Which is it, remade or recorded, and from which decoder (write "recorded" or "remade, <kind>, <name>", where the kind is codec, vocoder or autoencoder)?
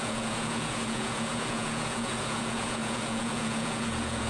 remade, vocoder, Vocos